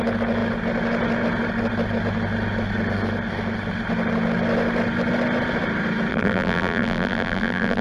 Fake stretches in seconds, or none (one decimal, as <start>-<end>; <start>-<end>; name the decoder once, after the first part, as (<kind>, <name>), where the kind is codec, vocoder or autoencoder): 6.1-7.8 (vocoder, BigVGAN v2)